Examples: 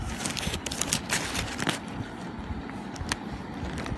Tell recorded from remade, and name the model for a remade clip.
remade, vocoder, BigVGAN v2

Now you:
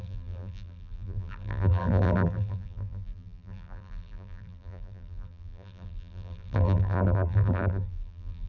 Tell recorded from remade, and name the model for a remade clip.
remade, vocoder, BigVGAN v2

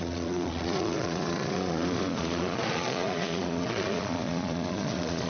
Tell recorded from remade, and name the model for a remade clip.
remade, vocoder, Vocos